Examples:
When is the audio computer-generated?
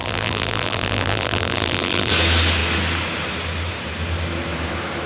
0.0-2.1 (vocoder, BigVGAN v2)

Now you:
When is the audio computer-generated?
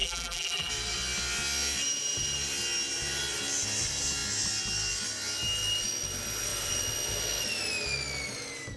0.0-0.7 (vocoder, BigVGAN v2)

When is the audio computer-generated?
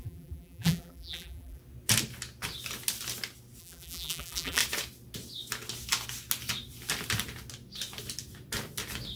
0.0-1.6 (vocoder, BigVGAN v2); 3.6-4.6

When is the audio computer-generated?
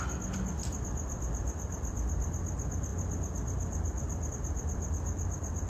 none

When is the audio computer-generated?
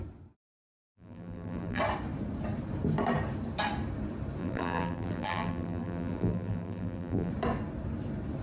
0.8-1.8 (vocoder, BigVGAN v2); 4.4-7.3